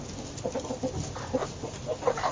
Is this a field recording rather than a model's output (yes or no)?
yes